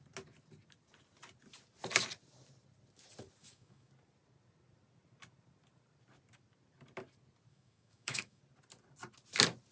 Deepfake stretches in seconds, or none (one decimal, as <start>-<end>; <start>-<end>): 3.4-3.9; 7.5-8.4